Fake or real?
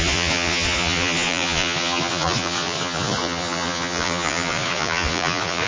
fake